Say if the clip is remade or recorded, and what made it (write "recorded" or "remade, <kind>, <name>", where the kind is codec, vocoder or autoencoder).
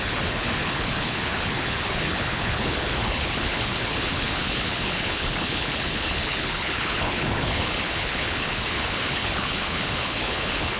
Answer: remade, codec, HILCodec